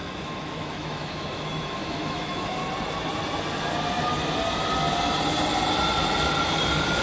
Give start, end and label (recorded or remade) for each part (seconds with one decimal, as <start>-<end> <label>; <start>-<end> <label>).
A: 0.0-2.6 remade; 2.6-7.0 recorded